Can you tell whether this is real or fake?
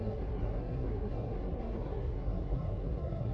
fake